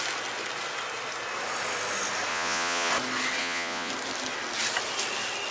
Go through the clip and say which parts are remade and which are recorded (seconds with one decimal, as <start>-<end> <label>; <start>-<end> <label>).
0.0-2.3 recorded; 2.3-2.9 remade; 2.9-3.4 recorded; 3.4-3.9 remade; 3.9-5.5 recorded

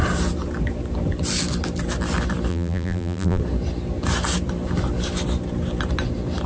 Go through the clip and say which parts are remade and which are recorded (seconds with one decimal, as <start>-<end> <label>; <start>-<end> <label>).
0.0-2.5 recorded; 2.5-3.4 remade; 3.4-6.5 recorded